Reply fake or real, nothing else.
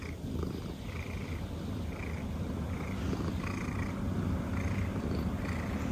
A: real